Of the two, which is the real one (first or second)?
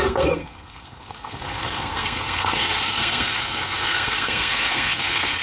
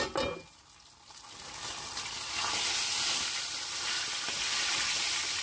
second